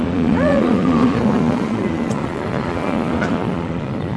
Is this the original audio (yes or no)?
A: no